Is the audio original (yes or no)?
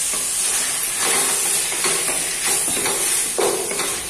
yes